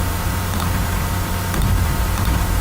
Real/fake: fake